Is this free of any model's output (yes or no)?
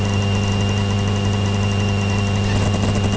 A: yes